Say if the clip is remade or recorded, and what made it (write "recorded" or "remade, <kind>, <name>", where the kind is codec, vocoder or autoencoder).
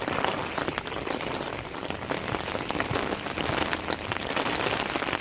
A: recorded